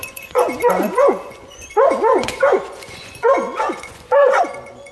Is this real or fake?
fake